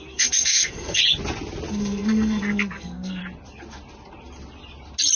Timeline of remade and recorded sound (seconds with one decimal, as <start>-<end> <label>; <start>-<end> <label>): 0.0-1.0 remade; 1.0-1.7 recorded; 1.7-3.2 remade; 3.2-5.2 recorded